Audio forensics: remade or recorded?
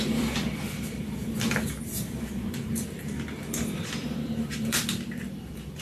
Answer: remade